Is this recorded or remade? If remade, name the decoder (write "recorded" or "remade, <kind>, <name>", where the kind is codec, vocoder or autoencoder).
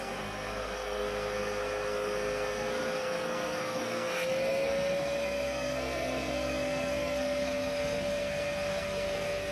remade, codec, SNAC